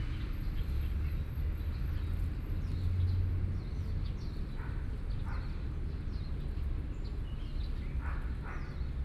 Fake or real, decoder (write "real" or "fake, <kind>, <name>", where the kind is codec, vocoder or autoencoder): real